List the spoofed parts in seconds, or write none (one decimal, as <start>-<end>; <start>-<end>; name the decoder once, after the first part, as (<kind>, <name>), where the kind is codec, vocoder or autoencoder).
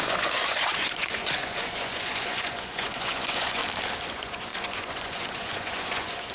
0.0-3.6 (vocoder, Vocos); 4.1-6.3